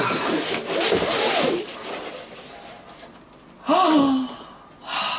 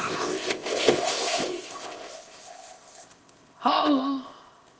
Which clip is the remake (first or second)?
second